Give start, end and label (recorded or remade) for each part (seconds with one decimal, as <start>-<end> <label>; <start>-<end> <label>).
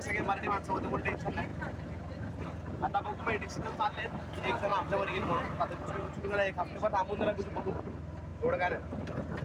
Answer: 0.0-9.4 recorded